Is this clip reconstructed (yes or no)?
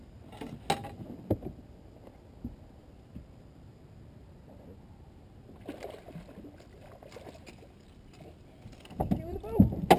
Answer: no